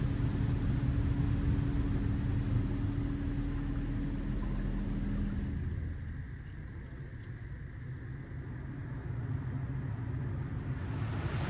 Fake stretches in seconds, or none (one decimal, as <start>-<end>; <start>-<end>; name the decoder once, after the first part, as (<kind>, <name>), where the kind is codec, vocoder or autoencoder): none